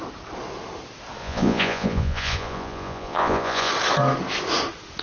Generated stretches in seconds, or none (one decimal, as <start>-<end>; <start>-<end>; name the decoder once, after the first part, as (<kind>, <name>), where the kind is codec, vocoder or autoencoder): 1.2-3.7 (vocoder, Vocos)